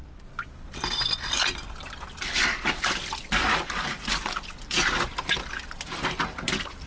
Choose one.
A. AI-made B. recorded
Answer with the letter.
A